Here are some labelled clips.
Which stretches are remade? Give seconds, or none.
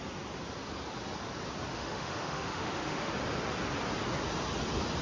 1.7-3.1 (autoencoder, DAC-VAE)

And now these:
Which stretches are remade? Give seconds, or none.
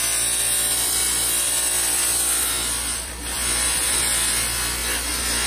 0.7-4.0 (vocoder, BigVGAN v2); 4.8-5.5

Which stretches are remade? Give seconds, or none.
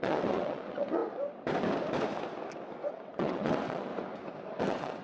0.0-1.0 (vocoder, WaveNeXt); 2.9-3.9; 4.6-5.0